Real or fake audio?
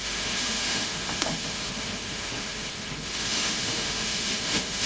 fake